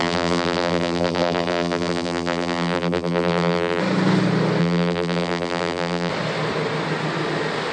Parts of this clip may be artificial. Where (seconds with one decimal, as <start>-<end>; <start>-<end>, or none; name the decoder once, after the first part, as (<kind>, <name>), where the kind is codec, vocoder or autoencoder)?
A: 0.0-3.8 (vocoder, BigVGAN v2); 4.6-6.1